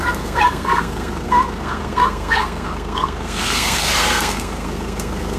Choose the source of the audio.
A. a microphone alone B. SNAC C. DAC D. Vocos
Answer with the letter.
B